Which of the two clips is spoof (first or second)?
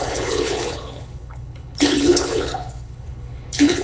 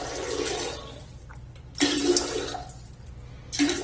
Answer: first